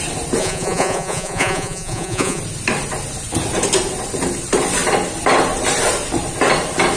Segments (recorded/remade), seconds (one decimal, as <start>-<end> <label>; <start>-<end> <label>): 0.0-0.4 recorded; 0.4-2.4 remade; 2.4-7.0 recorded